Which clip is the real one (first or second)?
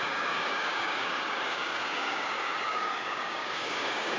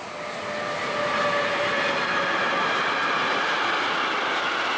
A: second